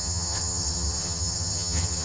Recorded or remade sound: remade